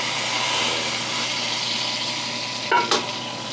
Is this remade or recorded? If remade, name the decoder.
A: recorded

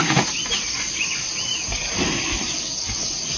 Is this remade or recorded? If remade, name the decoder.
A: remade, vocoder, BigVGAN v2